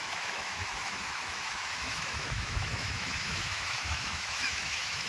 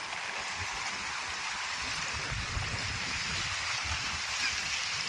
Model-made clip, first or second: first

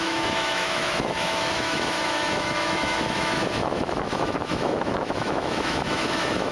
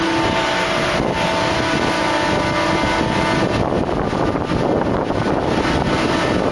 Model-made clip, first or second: first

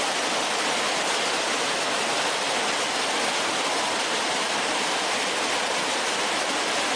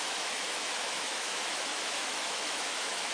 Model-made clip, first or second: second